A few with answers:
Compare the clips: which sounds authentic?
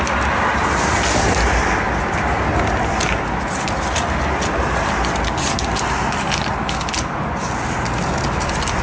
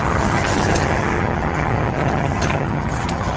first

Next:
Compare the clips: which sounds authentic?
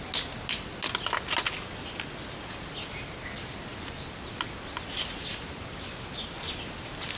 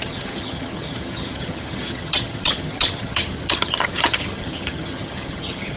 first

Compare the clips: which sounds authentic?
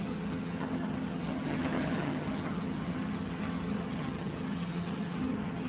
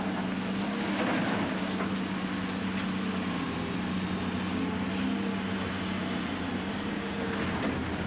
second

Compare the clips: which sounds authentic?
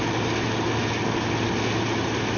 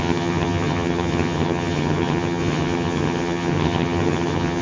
first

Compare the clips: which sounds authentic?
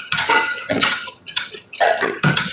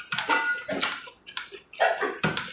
second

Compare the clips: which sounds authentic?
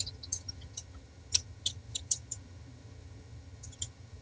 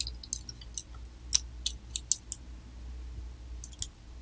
second